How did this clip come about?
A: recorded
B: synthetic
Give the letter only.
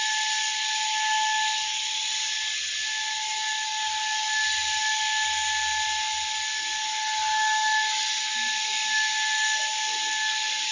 A